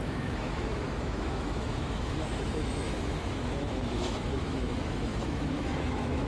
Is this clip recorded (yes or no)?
no